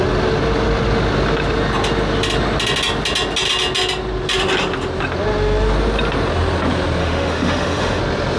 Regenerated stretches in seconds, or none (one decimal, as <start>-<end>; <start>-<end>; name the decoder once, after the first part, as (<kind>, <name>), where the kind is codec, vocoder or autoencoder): 7.0-8.0 (autoencoder, DAC-VAE)

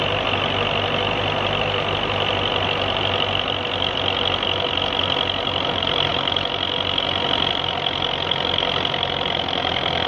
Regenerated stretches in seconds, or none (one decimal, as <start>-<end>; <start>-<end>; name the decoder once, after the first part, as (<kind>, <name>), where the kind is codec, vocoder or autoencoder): none